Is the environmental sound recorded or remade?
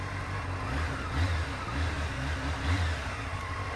recorded